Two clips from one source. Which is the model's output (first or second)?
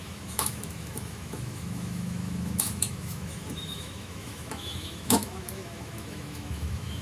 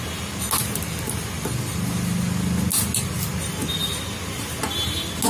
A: first